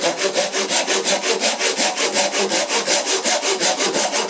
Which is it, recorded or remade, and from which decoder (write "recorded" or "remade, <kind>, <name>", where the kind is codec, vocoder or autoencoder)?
recorded